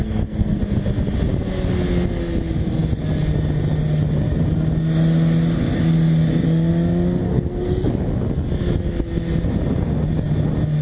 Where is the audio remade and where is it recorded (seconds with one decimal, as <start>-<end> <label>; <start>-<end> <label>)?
0.0-0.6 remade; 0.6-7.2 recorded; 7.2-7.9 remade; 7.9-10.8 recorded